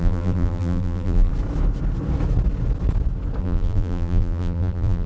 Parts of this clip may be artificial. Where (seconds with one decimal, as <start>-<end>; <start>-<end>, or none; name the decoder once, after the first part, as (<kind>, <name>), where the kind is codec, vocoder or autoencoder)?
0.0-1.3 (vocoder, BigVGAN v2); 3.4-5.1